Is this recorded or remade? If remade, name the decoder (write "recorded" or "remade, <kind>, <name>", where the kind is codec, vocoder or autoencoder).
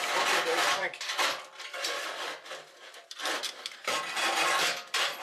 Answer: remade, vocoder, BigVGAN v2